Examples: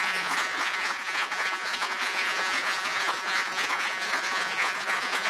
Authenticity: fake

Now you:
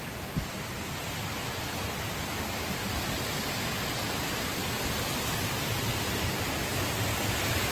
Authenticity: real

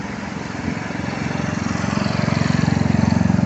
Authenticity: real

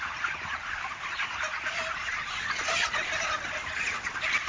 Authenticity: real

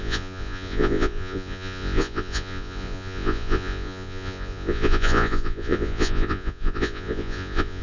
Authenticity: fake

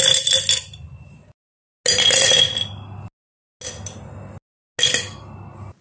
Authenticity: real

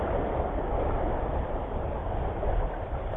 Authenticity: real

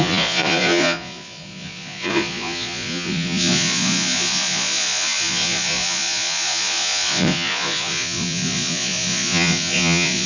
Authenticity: fake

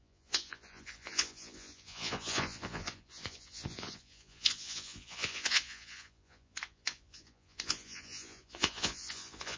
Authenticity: fake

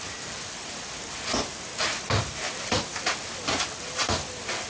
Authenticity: real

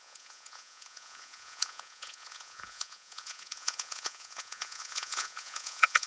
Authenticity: fake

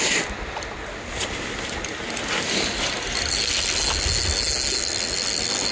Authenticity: real